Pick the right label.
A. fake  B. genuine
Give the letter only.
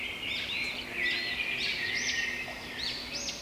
B